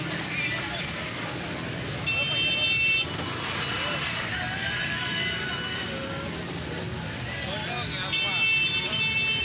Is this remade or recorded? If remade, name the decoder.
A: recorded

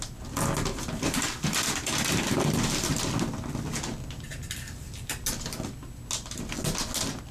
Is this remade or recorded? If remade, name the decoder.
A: recorded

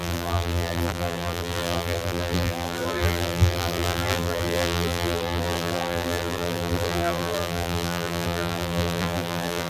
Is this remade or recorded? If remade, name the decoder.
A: remade, vocoder, BigVGAN v2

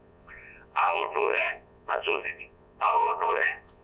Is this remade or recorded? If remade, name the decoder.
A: remade, vocoder, Vocos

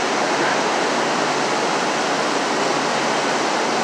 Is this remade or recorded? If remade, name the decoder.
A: recorded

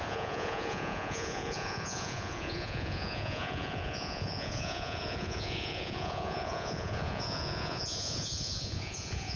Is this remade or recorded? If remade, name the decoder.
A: remade, vocoder, Vocos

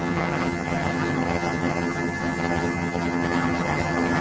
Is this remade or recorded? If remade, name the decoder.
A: remade, vocoder, HiFi-GAN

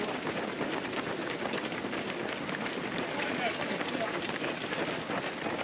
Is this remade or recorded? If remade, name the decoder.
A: recorded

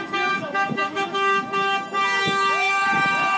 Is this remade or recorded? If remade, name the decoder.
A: remade, autoencoder, DAC-VAE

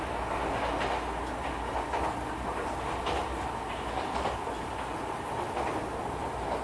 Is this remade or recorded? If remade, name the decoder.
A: recorded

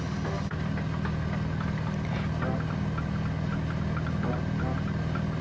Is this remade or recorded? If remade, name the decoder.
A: recorded